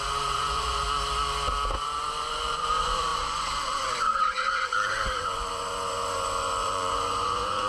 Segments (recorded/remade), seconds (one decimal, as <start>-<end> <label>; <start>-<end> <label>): 0.0-0.8 remade; 0.8-1.7 recorded; 1.7-7.7 remade